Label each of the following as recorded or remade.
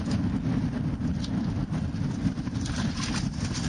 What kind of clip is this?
recorded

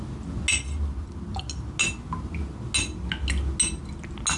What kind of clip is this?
recorded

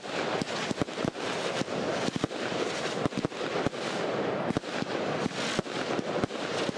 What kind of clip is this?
recorded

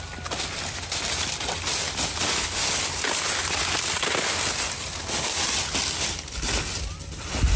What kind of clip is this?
recorded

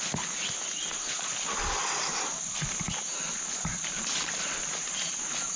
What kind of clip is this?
recorded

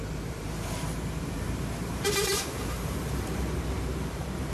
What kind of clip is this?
remade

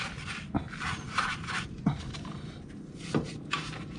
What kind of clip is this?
recorded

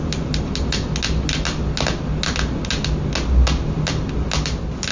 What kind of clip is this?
recorded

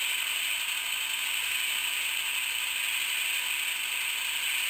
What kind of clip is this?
recorded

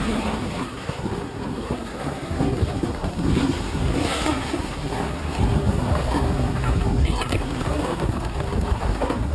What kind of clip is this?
remade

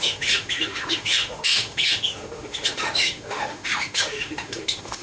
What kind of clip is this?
remade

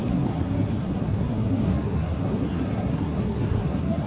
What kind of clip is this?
remade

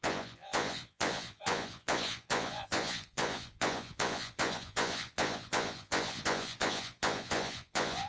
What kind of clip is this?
remade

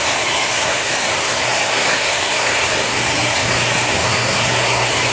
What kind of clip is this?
remade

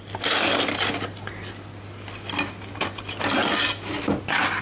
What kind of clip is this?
recorded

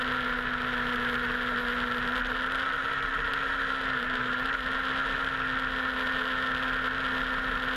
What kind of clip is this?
recorded